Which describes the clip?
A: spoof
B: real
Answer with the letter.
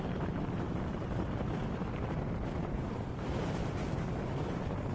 A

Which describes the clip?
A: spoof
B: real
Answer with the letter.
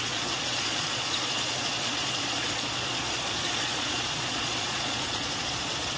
A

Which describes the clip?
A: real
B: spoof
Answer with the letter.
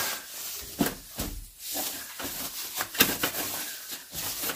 A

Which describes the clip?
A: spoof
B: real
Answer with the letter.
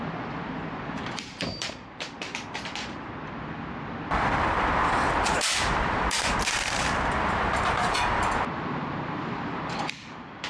A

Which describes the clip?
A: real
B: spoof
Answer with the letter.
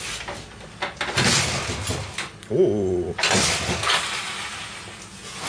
A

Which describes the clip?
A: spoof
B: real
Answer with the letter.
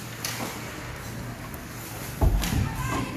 B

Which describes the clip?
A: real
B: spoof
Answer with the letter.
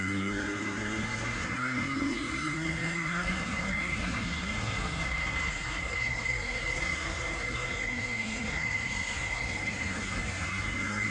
B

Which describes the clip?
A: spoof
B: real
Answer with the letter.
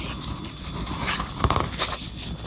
B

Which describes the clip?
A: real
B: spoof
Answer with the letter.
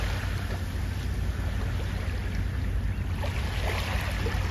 A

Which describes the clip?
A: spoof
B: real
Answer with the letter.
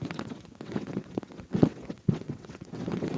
A